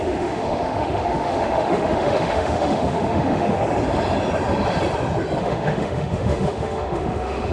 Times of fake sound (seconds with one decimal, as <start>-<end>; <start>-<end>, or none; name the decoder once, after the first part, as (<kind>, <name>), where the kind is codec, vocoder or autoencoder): 0.0-3.6 (autoencoder, DAC-VAE); 5.4-7.5